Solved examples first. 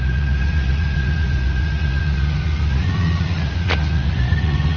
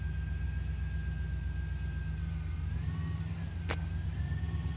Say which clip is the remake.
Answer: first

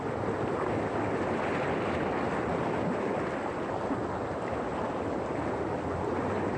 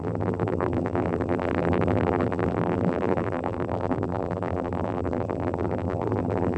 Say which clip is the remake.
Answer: second